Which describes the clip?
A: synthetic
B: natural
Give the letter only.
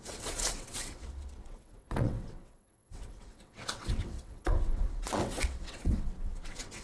A